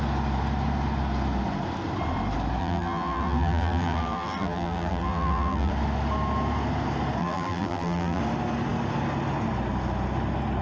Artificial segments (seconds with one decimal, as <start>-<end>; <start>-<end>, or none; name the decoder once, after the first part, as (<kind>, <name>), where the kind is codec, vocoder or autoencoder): 2.6-5.7 (vocoder, BigVGAN v2); 7.2-8.2